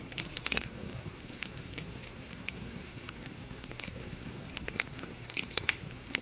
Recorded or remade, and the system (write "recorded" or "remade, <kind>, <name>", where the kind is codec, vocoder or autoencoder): remade, codec, SNAC